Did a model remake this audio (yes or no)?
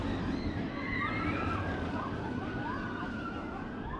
no